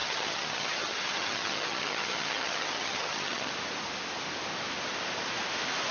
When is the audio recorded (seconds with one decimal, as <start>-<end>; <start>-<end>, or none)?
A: 3.5-5.9